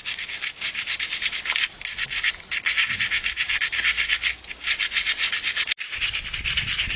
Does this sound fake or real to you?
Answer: real